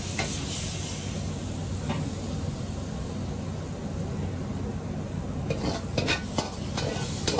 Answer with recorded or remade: recorded